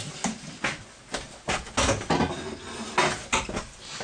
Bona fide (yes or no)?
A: yes